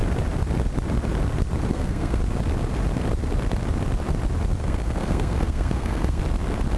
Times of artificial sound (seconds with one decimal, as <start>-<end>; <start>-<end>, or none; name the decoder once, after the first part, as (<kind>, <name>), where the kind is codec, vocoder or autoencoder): 1.7-2.2 (codec, SNAC); 4.6-6.2